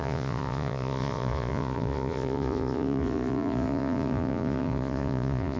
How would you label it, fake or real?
fake